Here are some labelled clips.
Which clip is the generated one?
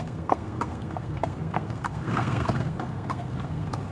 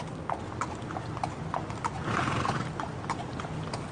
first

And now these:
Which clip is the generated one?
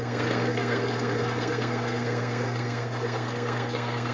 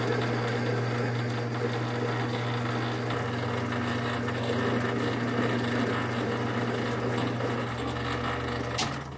first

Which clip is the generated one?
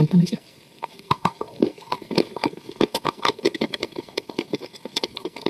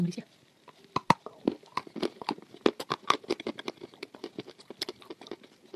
first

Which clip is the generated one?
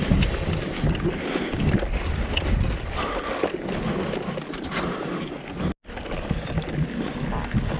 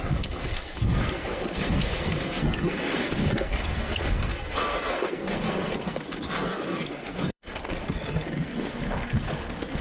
second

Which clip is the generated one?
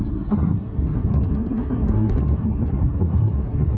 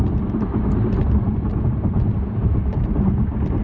first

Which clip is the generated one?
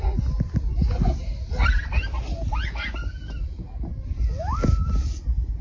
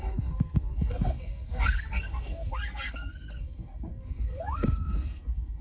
second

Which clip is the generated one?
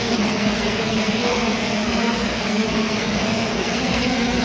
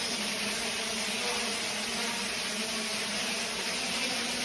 first